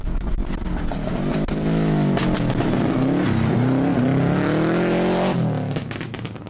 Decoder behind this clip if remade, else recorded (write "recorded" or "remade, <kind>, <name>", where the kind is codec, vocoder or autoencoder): recorded